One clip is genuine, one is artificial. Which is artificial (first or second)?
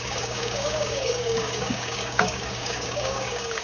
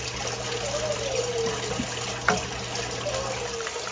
first